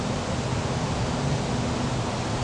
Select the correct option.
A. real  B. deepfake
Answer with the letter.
A